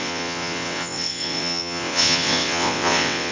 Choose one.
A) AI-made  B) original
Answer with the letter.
A